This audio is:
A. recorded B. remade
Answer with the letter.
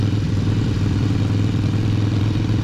B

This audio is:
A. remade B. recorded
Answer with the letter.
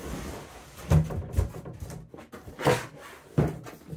B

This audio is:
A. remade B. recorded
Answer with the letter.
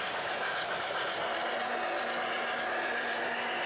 B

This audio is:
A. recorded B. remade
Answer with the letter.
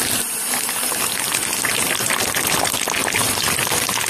A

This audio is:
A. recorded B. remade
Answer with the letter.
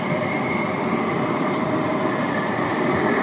B